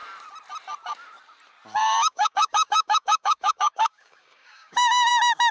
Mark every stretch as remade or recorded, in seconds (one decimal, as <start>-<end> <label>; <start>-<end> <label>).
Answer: 0.0-1.8 recorded; 1.8-5.1 remade; 5.1-5.5 recorded